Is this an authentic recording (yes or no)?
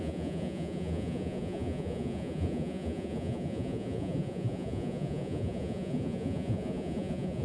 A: no